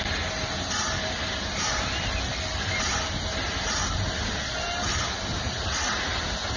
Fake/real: real